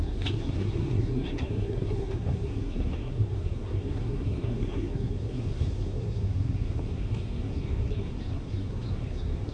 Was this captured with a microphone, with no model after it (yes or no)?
no